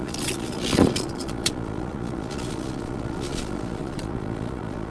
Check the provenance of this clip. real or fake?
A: fake